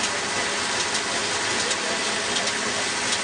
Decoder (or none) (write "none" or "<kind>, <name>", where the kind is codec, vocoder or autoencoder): none